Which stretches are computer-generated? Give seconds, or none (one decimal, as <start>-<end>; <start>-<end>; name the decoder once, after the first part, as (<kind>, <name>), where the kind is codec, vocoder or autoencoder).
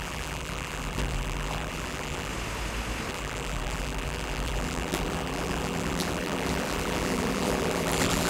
0.0-2.3 (vocoder, BigVGAN v2); 3.1-8.3